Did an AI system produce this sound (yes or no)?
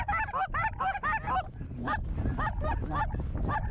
no